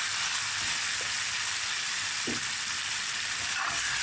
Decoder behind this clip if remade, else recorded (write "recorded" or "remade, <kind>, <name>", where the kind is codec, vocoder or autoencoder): recorded